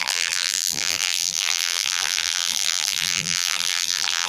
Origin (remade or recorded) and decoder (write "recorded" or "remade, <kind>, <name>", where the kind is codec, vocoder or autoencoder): remade, vocoder, BigVGAN v2